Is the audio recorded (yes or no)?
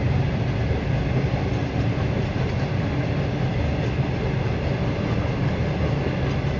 yes